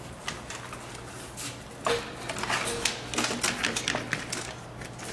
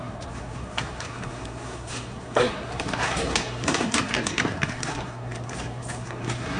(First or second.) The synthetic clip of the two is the second